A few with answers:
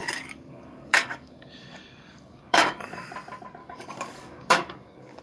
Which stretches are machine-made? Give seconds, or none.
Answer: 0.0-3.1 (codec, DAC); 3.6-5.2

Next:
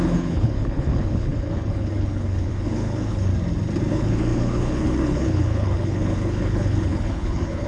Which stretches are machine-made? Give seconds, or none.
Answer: 0.0-3.3 (codec, HILCodec); 3.9-7.7

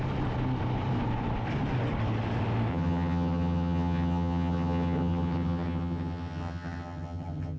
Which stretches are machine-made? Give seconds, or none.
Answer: 2.7-7.6 (vocoder, HiFi-GAN)

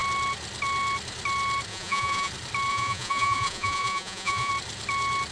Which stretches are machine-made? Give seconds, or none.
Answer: 1.7-2.3 (vocoder, Vocos); 2.7-4.5

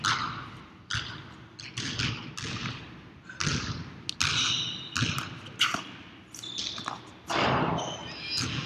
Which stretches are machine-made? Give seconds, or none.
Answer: none

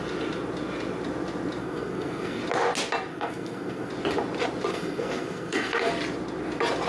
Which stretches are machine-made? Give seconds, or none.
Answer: 1.6-2.4 (codec, SNAC); 3.1-3.9; 4.7-5.9

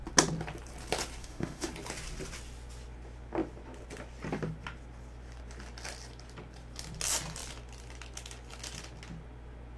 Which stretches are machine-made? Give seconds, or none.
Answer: 1.2-1.7 (autoencoder, DAC-VAE)